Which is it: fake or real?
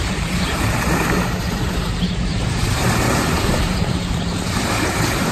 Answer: fake